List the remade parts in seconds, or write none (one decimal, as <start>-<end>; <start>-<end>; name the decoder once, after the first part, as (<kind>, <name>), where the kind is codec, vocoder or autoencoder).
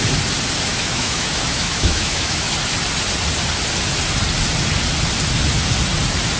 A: 0.7-2.5 (autoencoder, DAC-VAE)